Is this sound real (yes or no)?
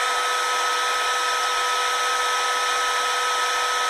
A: yes